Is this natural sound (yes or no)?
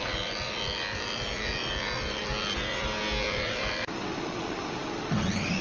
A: yes